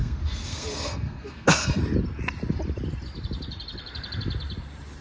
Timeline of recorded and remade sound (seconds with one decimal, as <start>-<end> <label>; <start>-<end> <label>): 0.0-1.8 remade; 1.8-5.0 recorded